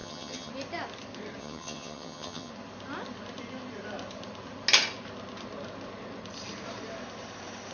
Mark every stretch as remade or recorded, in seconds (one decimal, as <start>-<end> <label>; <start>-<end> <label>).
0.0-0.5 remade; 0.5-1.4 recorded; 1.4-2.5 remade; 2.5-7.7 recorded